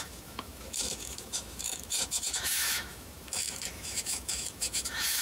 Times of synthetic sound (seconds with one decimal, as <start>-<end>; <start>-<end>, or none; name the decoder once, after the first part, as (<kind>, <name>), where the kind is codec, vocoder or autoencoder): 0.0-5.2 (autoencoder, DAC-VAE)